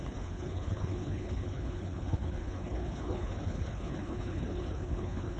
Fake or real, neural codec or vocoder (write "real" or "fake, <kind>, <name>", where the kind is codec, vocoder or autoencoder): fake, codec, HILCodec